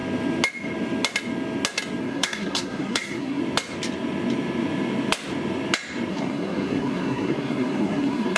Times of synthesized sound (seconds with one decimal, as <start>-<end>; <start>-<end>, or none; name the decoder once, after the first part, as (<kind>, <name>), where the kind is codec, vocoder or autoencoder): 2.0-3.4 (codec, SNAC); 6.1-8.4